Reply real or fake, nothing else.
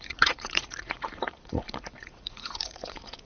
fake